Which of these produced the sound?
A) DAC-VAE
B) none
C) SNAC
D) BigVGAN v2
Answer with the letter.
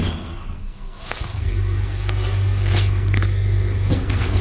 C